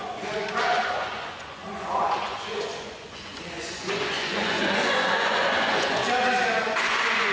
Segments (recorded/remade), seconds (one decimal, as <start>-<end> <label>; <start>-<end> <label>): 0.0-6.0 remade; 6.0-6.6 recorded; 6.6-7.3 remade